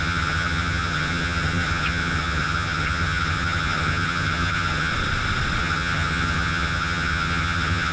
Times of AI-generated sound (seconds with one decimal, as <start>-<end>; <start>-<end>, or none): 0.0-4.9; 5.6-7.9